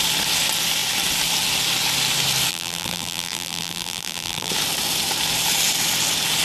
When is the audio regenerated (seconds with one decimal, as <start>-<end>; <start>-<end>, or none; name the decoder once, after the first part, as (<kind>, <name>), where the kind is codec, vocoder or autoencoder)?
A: 2.5-4.5 (vocoder, BigVGAN v2)